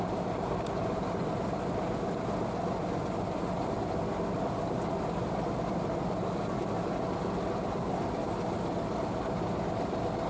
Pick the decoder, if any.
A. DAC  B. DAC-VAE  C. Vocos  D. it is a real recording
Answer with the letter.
D